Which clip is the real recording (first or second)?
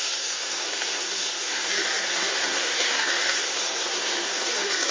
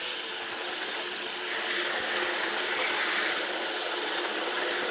second